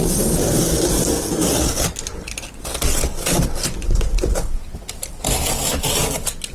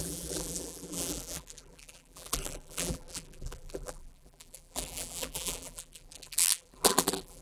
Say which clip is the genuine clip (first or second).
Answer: first